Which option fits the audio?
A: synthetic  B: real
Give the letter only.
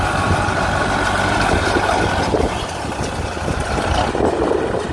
B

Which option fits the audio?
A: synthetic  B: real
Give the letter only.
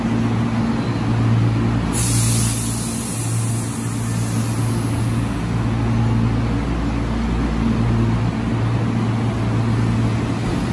B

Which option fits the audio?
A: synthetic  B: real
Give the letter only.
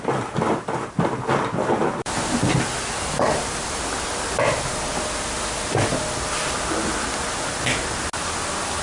B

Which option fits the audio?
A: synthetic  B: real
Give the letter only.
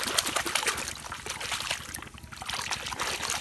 B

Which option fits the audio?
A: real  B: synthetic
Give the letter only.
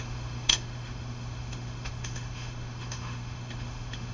B